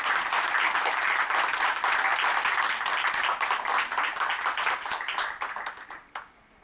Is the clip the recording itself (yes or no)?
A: yes